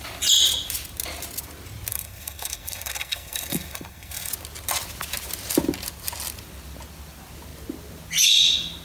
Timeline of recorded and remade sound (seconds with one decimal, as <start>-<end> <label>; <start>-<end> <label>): 0.0-1.9 recorded; 1.9-4.3 remade; 4.3-8.8 recorded